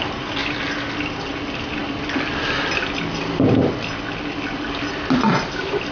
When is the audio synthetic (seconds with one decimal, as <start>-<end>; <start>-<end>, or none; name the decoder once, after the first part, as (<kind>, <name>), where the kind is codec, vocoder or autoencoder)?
none